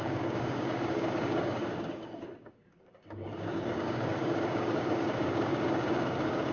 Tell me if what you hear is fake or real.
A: fake